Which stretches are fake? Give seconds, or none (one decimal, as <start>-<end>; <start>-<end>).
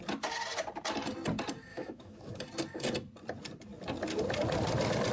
1.7-2.4